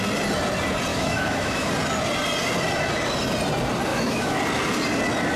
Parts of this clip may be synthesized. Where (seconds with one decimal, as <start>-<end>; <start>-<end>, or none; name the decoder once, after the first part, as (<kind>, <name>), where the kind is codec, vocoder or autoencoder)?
0.9-1.7 (autoencoder, DAC-VAE); 3.9-4.4